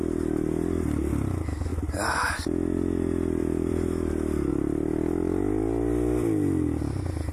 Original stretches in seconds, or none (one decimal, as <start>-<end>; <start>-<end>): 0.0-3.4; 4.1-7.3